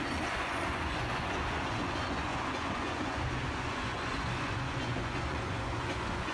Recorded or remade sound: remade